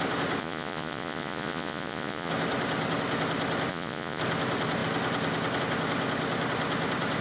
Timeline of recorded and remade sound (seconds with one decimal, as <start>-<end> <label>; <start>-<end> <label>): 0.0-0.4 recorded; 0.4-2.3 remade; 2.3-3.7 recorded; 3.7-4.2 remade; 4.2-7.2 recorded